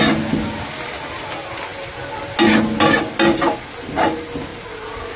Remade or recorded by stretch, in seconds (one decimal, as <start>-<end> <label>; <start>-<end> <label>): 0.0-5.2 recorded